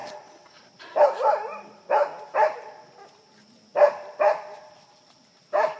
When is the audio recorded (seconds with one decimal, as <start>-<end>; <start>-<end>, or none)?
2.3-3.7